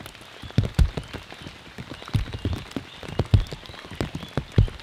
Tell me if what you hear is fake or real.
real